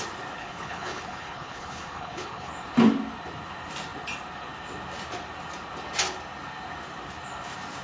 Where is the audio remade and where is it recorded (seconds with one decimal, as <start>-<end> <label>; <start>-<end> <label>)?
0.0-0.4 recorded; 0.4-2.5 remade; 2.5-7.8 recorded